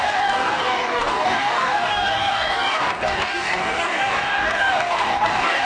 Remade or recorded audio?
remade